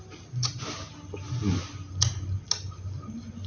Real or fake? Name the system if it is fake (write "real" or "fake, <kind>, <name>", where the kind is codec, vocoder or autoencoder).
real